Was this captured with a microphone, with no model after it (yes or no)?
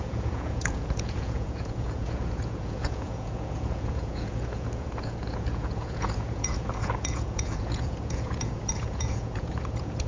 no